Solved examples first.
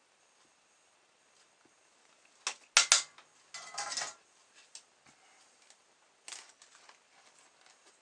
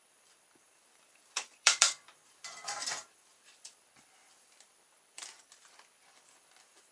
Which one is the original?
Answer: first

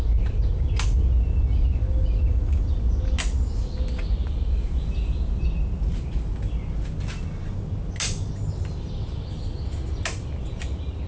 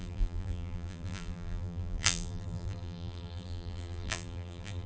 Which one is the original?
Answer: first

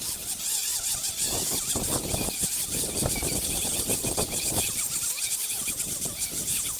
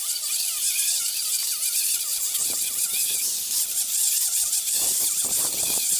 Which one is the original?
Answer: first